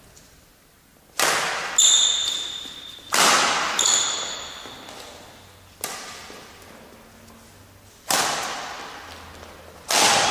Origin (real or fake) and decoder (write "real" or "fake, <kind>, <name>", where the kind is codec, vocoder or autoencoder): real